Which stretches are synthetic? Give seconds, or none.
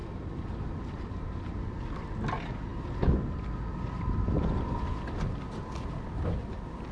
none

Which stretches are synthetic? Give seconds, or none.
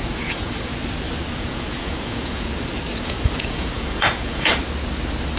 0.0-0.7 (vocoder, Vocos); 1.4-2.5; 3.0-4.6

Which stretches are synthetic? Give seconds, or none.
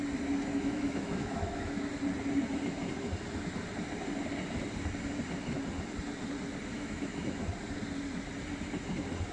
0.5-1.8 (autoencoder, DAC-VAE); 6.7-7.4